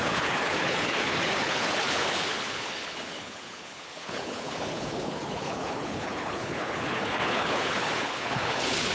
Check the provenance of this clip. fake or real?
fake